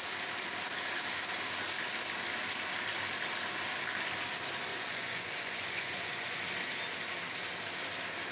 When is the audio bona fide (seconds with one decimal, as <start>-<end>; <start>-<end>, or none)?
0.0-4.7; 6.4-8.3